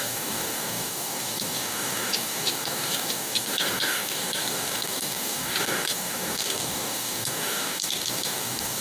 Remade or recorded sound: remade